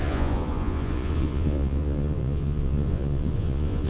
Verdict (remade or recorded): remade